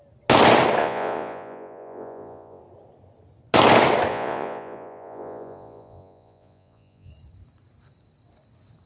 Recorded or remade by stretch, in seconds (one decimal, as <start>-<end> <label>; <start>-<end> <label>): 0.0-0.8 recorded; 0.8-2.6 remade; 2.6-4.1 recorded; 4.1-7.1 remade; 7.1-8.9 recorded